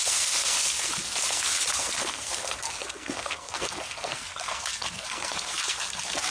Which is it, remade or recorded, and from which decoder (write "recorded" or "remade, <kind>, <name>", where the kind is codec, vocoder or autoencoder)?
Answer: remade, codec, SNAC